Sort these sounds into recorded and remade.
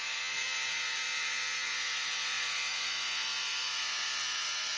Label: remade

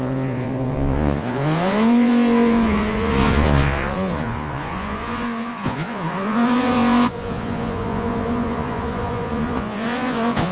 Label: remade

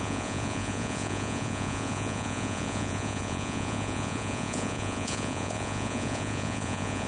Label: remade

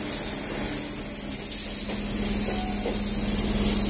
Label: recorded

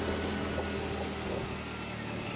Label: recorded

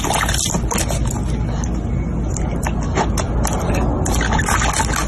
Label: recorded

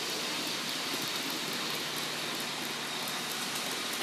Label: recorded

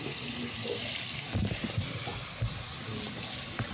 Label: recorded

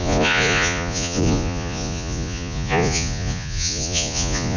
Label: remade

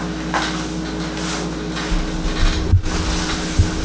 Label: recorded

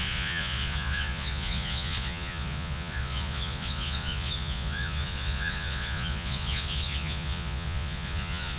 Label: remade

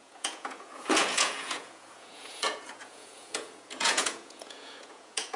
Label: remade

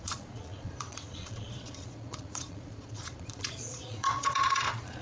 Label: remade